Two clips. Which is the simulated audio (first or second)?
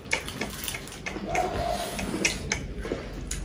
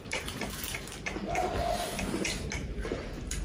second